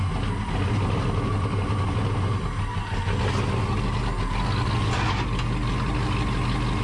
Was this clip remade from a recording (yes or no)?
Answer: no